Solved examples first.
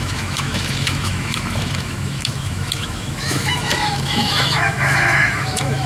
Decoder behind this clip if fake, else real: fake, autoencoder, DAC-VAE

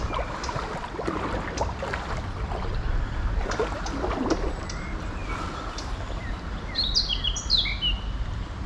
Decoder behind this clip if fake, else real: real